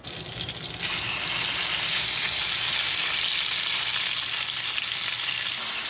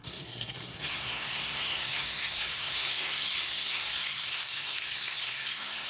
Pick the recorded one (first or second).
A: first